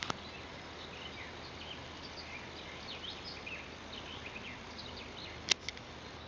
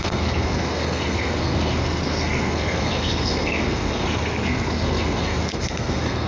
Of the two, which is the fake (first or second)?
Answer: second